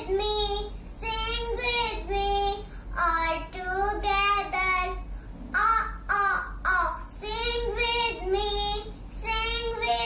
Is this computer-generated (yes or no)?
no